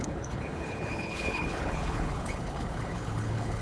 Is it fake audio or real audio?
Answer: fake